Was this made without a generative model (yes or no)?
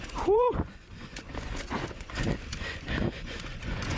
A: no